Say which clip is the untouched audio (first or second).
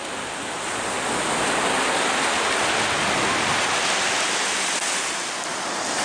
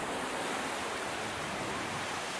first